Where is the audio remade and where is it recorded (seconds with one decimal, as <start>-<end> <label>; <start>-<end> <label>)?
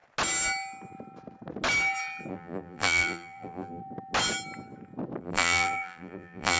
0.0-2.3 recorded; 2.3-3.8 remade; 3.8-5.2 recorded; 5.2-6.6 remade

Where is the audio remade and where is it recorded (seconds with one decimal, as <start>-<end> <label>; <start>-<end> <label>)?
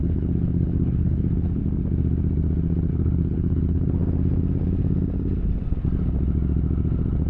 0.0-1.6 remade; 1.6-2.9 recorded; 2.9-4.0 remade; 4.0-7.3 recorded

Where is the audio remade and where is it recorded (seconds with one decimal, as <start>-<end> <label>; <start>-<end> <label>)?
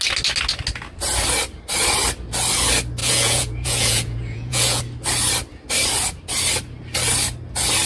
0.0-3.0 recorded; 3.0-4.8 remade; 4.8-7.9 recorded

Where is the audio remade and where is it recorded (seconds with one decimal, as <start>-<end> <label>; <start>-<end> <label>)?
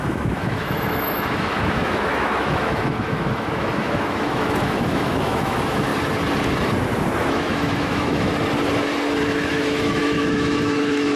0.0-5.9 remade; 5.9-7.2 recorded; 7.2-8.3 remade; 8.3-9.5 recorded; 9.5-11.2 remade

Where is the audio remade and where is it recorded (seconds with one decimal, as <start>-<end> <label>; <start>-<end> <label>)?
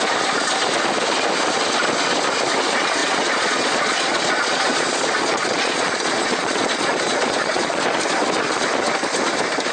0.0-3.0 recorded; 3.0-7.8 remade; 7.8-9.7 recorded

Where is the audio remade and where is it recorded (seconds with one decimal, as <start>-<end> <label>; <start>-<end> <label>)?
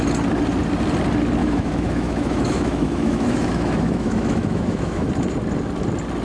0.0-1.4 recorded; 1.4-5.1 remade; 5.1-6.2 recorded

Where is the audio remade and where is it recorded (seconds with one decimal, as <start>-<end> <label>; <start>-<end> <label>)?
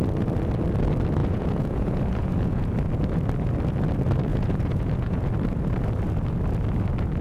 0.0-1.2 recorded; 1.2-2.7 remade; 2.7-4.3 recorded; 4.3-5.3 remade; 5.3-7.2 recorded